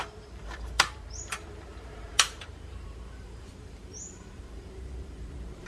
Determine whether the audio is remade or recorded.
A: remade